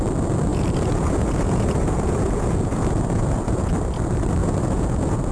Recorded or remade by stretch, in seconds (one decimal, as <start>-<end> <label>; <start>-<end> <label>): 0.0-0.5 recorded; 0.5-3.7 remade; 3.7-4.4 recorded; 4.4-5.3 remade